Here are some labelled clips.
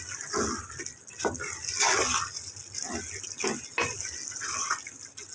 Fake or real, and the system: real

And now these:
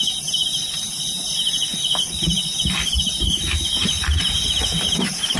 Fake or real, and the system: fake, vocoder, BigVGAN v2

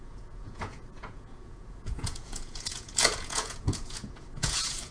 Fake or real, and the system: fake, vocoder, Vocos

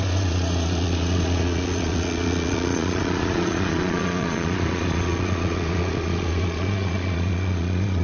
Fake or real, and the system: fake, vocoder, Vocos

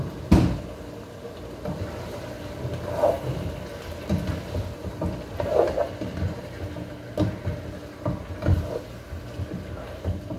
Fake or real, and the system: real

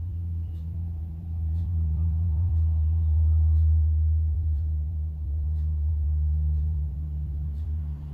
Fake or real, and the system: fake, vocoder, BigVGAN v2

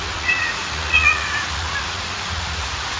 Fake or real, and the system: fake, vocoder, Vocos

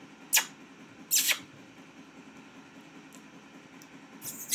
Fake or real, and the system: real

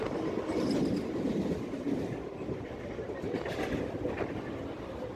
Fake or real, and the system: real